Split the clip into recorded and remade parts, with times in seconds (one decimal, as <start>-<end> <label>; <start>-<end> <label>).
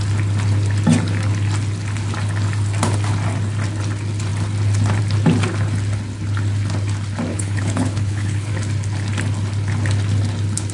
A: 0.0-7.3 recorded; 7.3-8.5 remade; 8.5-10.7 recorded